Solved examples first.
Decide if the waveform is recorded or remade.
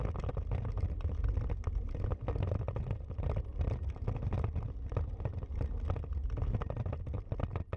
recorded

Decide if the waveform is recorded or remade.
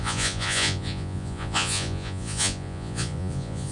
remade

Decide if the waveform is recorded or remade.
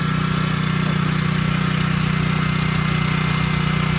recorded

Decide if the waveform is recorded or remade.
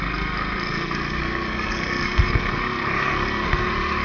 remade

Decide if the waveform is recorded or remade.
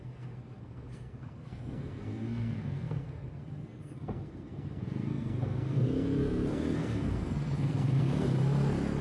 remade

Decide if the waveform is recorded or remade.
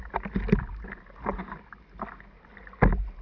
recorded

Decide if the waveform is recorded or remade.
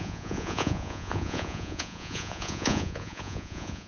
remade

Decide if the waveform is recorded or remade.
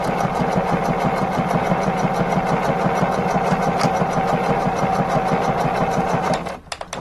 recorded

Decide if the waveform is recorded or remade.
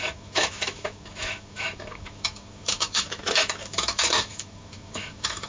remade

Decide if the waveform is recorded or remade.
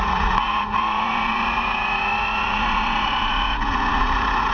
remade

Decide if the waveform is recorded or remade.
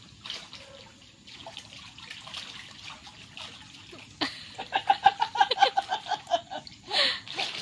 recorded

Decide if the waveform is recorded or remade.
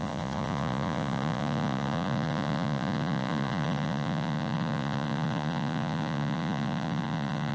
remade